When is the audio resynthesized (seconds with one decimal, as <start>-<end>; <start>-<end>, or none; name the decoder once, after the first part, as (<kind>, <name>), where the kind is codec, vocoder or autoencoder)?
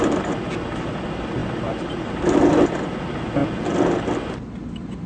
none